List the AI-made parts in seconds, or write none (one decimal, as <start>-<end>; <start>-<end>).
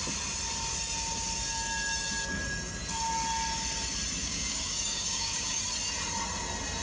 4.2-5.6